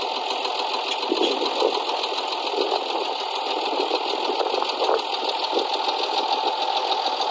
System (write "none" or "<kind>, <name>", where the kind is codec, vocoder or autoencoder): none